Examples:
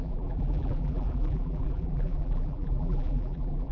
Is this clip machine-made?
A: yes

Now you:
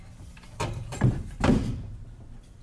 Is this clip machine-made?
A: yes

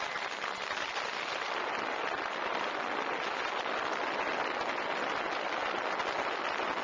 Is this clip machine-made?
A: no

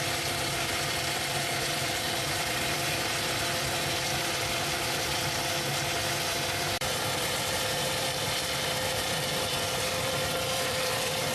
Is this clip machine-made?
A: yes